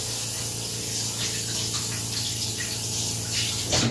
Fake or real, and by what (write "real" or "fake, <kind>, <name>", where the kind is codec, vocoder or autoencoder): real